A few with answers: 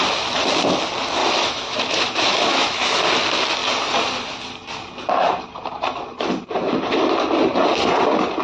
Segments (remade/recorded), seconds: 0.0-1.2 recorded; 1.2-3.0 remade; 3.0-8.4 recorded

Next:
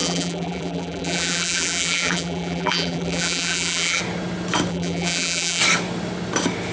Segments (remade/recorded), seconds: 0.0-4.0 remade; 4.0-4.7 recorded; 4.7-5.6 remade; 5.6-6.7 recorded

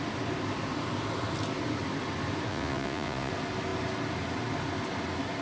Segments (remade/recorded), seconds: 0.0-2.5 recorded; 2.5-3.3 remade; 3.3-5.4 recorded

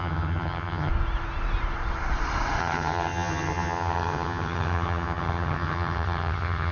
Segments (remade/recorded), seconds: 0.0-0.9 remade; 0.9-2.6 recorded; 2.6-6.7 remade

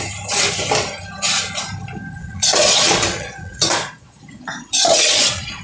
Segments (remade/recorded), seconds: 0.0-2.2 recorded; 2.2-5.6 remade

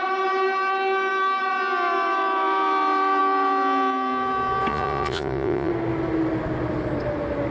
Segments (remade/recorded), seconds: 0.0-4.7 recorded; 4.7-5.7 remade; 5.7-7.5 recorded

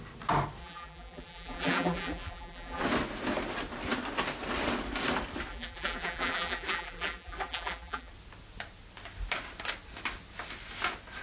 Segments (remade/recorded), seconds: 0.0-0.6 recorded; 0.6-2.8 remade; 2.8-5.5 recorded; 5.5-8.1 remade; 8.1-11.2 recorded